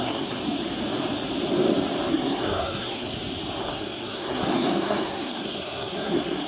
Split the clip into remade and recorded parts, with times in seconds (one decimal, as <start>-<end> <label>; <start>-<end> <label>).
0.0-0.4 remade; 0.4-2.1 recorded; 2.1-3.1 remade; 3.1-3.6 recorded; 3.6-6.5 remade